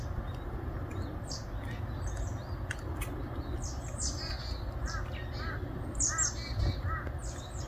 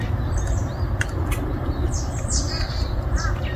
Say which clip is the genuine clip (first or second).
first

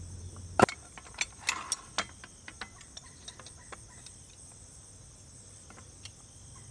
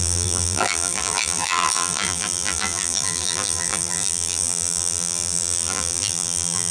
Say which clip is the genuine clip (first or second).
first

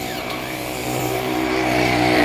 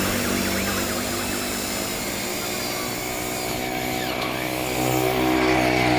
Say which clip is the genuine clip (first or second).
second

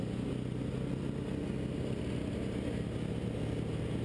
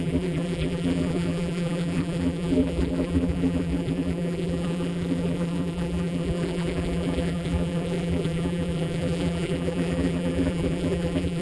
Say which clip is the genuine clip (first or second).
first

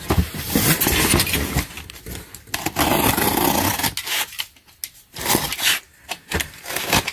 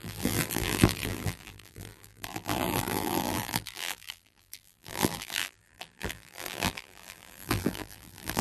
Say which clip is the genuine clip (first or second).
first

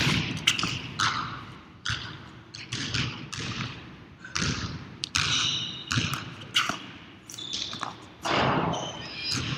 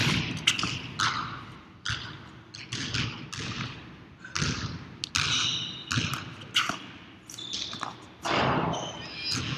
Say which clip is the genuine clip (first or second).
second